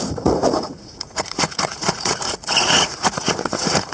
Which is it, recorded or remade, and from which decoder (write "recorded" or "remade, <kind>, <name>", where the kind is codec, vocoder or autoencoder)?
remade, vocoder, Vocos